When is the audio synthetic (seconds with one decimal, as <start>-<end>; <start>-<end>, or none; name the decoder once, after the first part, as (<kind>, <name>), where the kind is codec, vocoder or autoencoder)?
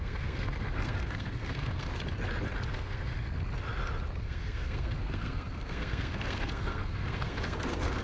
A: 0.0-1.9 (codec, SNAC); 2.7-3.1; 4.2-8.0